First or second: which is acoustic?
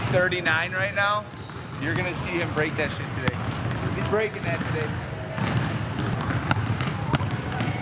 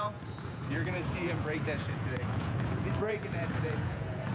first